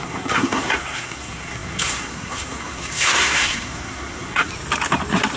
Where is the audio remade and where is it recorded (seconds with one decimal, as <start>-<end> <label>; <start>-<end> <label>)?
0.0-4.5 remade; 4.5-5.4 recorded